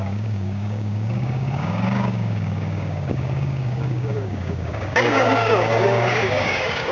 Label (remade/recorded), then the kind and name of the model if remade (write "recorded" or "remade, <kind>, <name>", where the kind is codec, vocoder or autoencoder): remade, codec, DAC